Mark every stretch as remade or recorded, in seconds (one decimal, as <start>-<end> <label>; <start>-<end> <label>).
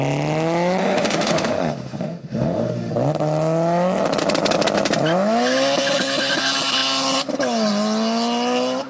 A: 0.0-0.8 recorded; 0.8-2.9 remade; 2.9-8.9 recorded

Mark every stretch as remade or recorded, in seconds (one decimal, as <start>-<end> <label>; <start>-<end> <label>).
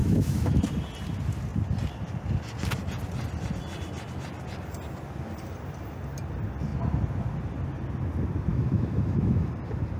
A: 0.0-0.6 remade; 0.6-8.5 recorded; 8.5-9.5 remade; 9.5-10.0 recorded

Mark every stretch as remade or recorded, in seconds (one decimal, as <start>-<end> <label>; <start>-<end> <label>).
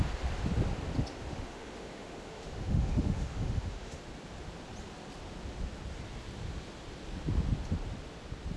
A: 0.0-1.3 recorded; 1.3-4.0 remade; 4.0-8.6 recorded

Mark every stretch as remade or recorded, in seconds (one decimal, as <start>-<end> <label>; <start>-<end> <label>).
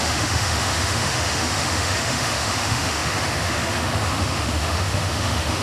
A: 0.0-5.6 remade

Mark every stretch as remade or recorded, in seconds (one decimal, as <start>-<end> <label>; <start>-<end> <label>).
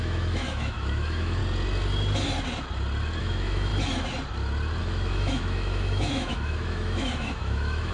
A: 0.0-1.4 remade; 1.4-3.2 recorded; 3.2-3.7 remade; 3.7-4.8 recorded; 4.8-7.9 remade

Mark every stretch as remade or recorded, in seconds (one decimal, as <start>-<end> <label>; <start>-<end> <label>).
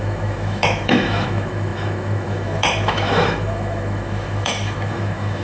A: 0.0-5.4 remade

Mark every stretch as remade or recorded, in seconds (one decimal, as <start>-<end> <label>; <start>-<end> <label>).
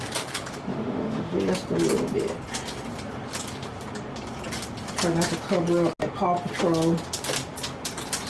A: 0.0-0.7 recorded; 0.7-1.3 remade; 1.3-8.3 recorded